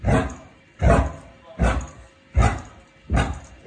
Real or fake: real